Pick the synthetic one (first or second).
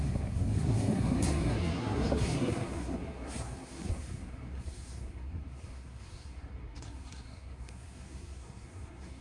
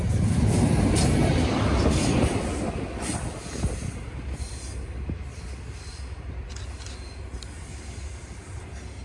first